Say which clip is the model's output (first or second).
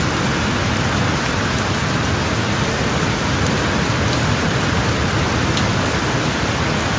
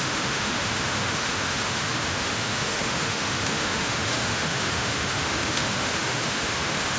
second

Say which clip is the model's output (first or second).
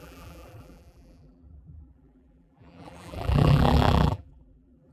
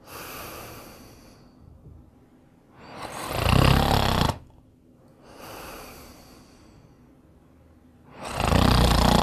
first